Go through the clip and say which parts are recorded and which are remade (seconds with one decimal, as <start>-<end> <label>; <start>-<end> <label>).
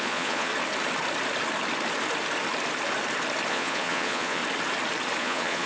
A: 0.0-0.5 remade; 0.5-3.5 recorded; 3.5-4.4 remade; 4.4-5.2 recorded; 5.2-5.7 remade